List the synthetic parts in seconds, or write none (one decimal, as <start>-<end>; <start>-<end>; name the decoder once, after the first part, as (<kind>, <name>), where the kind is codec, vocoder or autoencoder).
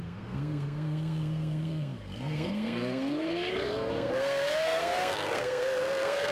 0.0-6.3 (codec, SNAC)